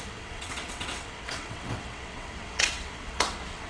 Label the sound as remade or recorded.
remade